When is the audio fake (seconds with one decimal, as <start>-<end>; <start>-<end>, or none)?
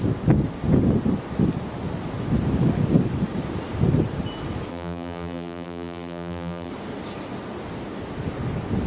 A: 4.7-6.7